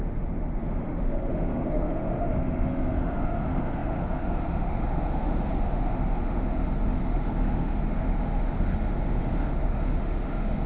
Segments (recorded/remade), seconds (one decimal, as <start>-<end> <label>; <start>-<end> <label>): 0.0-10.7 remade